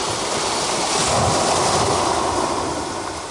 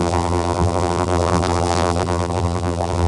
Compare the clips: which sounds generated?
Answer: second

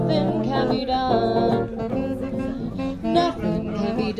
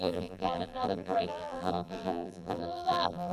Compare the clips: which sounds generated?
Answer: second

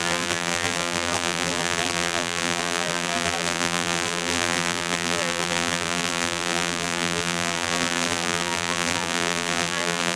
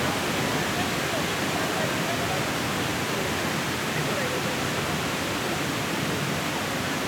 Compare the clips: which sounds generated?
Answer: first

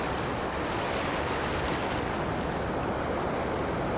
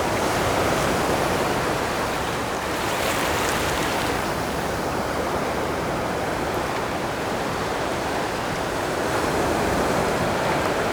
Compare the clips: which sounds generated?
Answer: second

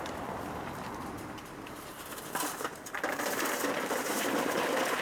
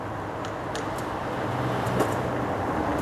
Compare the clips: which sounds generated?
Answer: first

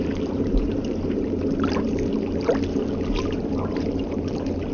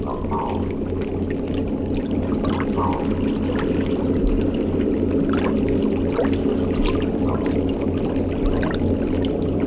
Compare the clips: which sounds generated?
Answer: first